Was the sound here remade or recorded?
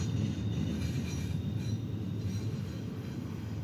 recorded